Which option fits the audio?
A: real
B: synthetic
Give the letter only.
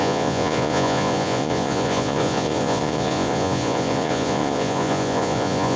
B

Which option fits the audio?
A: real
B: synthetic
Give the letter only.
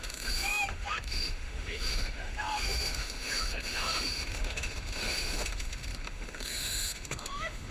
B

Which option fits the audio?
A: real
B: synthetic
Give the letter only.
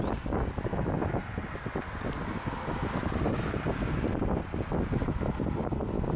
A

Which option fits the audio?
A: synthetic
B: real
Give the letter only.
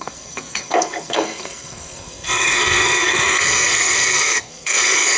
A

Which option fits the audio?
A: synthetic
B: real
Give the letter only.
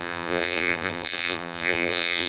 A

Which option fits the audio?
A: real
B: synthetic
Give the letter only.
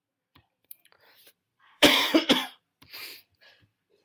B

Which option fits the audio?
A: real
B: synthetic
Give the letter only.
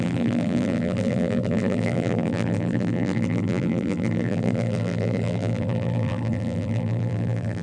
B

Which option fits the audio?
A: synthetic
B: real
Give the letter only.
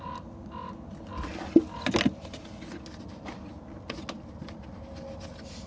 B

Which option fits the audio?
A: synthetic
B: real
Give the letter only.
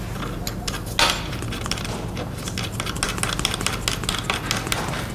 B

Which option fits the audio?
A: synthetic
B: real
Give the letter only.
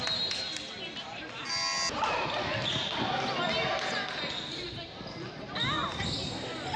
B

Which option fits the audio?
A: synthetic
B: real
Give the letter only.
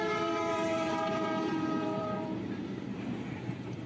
A